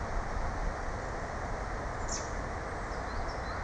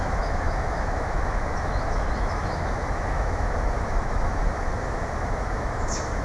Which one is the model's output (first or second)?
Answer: second